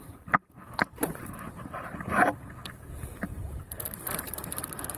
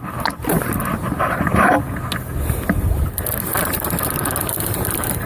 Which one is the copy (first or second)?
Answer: first